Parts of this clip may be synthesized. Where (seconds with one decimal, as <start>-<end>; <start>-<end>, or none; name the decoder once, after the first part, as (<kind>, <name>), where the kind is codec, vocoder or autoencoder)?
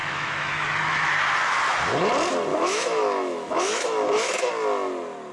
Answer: 0.0-1.1 (autoencoder, DAC-VAE); 2.5-4.5